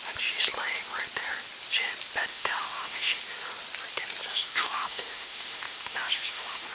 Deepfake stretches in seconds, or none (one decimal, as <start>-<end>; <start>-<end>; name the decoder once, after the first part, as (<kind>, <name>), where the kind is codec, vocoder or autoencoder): 2.3-3.2 (autoencoder, DAC-VAE); 4.3-6.7